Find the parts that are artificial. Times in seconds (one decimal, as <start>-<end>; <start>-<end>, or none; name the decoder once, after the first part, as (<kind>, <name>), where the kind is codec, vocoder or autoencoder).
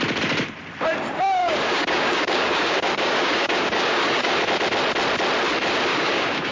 1.4-4.4 (codec, DAC); 5.9-6.5